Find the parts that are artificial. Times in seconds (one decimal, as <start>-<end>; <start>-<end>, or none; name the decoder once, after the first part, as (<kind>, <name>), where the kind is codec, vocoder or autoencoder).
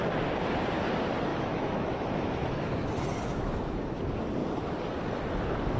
1.3-4.0 (autoencoder, DAC-VAE)